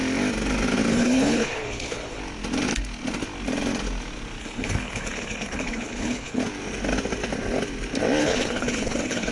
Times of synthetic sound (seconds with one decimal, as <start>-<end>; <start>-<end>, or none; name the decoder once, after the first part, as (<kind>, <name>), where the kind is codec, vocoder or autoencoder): 0.9-2.2 (codec, HILCodec); 4.4-6.4; 8.2-9.3